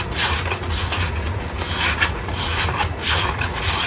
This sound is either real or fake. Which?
fake